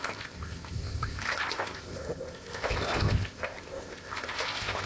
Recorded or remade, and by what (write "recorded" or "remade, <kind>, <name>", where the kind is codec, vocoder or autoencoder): remade, codec, ZipCodec